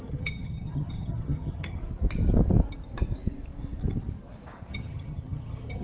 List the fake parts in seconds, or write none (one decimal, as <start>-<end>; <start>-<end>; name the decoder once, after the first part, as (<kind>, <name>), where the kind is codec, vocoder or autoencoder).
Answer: 0.0-1.8 (vocoder, HiFi-GAN); 4.7-5.8

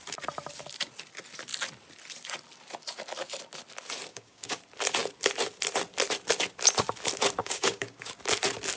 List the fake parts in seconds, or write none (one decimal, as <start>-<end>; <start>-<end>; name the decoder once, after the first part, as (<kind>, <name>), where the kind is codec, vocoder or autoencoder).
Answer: 4.1-4.6 (codec, DAC); 7.4-8.1

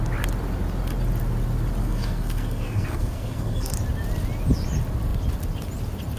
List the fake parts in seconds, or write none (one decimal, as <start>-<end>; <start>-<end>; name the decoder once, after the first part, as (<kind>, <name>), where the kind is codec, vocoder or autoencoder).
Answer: 1.8-3.7 (codec, SNAC)

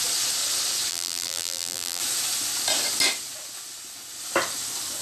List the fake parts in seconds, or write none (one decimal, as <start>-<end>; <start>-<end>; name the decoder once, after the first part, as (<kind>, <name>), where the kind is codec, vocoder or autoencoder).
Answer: 0.9-2.0 (vocoder, BigVGAN v2)

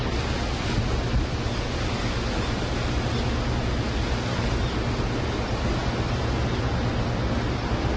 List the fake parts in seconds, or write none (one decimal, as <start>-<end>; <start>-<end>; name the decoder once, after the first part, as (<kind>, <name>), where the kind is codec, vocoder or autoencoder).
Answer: none

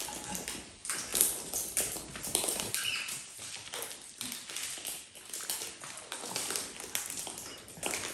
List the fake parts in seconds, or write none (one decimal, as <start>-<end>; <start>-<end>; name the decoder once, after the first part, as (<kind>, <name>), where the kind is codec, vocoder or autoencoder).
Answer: 1.1-3.4 (vocoder, BigVGAN v2)